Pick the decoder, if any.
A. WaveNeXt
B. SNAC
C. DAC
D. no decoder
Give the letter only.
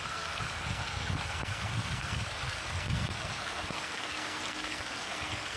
B